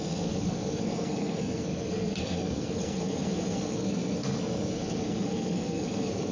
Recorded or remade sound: remade